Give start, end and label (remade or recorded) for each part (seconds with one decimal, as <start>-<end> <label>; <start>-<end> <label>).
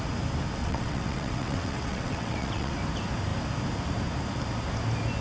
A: 0.0-0.6 recorded; 0.6-2.7 remade; 2.7-5.2 recorded